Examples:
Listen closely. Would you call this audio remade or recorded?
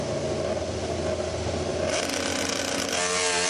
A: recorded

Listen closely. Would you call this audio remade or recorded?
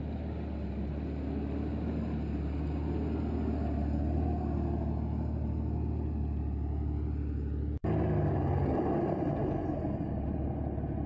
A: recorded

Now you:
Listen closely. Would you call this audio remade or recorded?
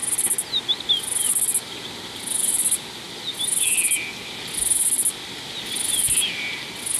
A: recorded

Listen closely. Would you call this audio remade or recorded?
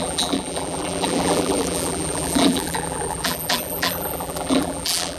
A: remade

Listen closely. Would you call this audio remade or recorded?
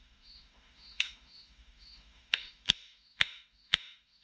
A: remade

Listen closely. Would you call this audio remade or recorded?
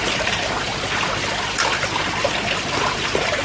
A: recorded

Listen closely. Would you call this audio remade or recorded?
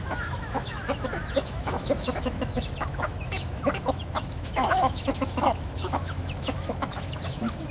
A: remade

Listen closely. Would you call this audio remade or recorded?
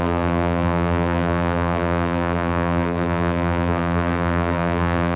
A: remade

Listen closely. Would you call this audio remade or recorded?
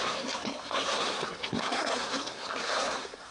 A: remade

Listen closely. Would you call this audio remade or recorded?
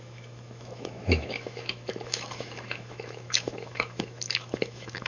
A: remade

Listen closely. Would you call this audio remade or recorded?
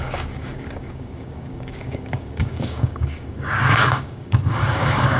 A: remade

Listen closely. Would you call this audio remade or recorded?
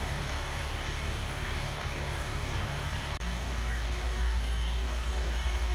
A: remade